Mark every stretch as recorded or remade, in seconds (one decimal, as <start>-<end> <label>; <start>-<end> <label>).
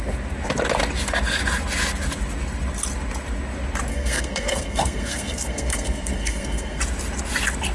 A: 0.0-3.9 recorded; 3.9-6.8 remade; 6.8-7.7 recorded